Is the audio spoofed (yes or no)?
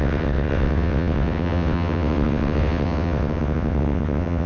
yes